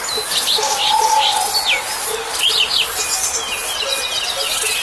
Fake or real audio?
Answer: real